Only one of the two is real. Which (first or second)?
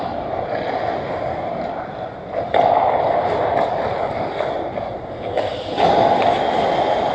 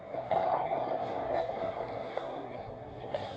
first